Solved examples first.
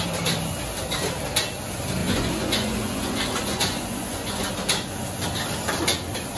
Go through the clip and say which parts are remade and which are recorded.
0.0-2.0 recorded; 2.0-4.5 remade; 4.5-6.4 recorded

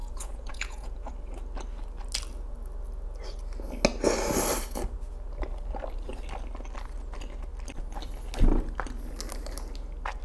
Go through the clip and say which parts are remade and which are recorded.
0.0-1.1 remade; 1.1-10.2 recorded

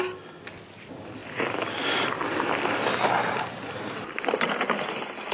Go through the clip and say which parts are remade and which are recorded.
0.0-5.3 recorded

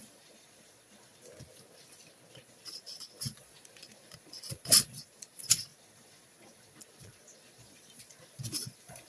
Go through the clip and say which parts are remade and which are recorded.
0.0-1.1 remade; 1.1-2.3 recorded; 2.3-9.1 remade

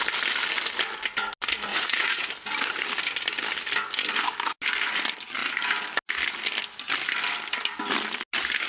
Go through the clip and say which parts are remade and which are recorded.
0.0-1.7 recorded; 1.7-2.3 remade; 2.3-8.7 recorded